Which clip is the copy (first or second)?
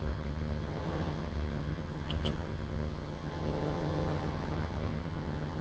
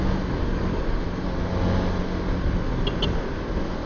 first